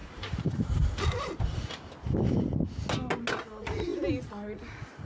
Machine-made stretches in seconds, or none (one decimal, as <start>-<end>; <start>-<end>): 0.0-1.9